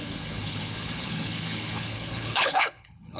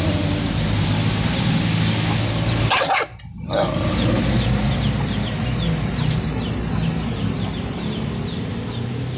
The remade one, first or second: first